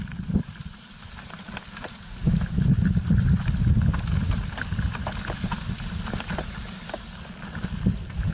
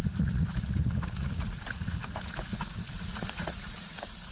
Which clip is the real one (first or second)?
first